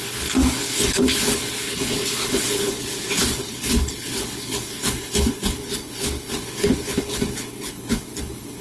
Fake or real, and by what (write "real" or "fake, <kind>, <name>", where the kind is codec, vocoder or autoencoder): fake, codec, HILCodec